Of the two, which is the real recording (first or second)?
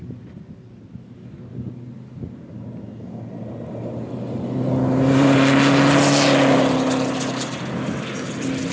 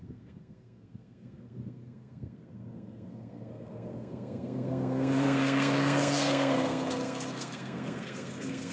first